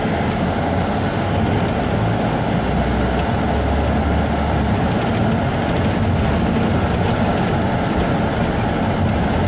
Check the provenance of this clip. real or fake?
real